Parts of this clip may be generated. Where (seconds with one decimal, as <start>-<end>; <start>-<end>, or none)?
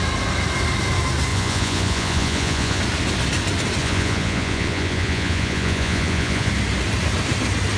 1.3-2.8; 3.8-6.5